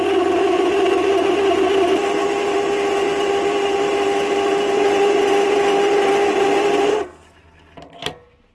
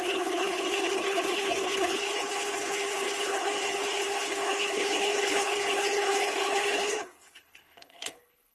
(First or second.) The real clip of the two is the first